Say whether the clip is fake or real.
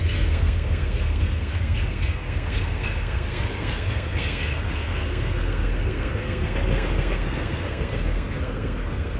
fake